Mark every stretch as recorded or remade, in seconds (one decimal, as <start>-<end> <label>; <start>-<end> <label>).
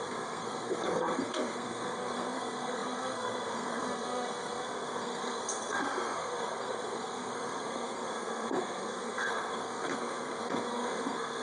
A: 0.0-11.4 remade